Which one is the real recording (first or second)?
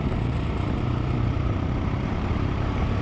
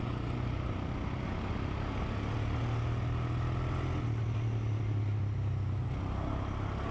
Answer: second